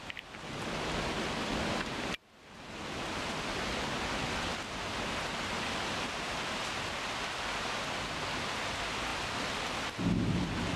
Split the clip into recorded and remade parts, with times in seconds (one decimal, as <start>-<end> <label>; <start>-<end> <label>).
0.0-10.8 recorded